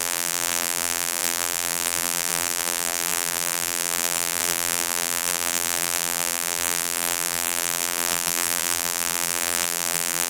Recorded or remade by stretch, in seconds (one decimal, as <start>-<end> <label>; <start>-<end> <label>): 0.0-10.3 remade